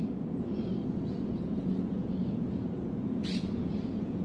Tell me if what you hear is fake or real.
fake